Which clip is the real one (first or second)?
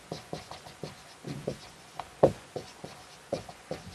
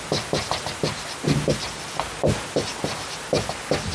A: second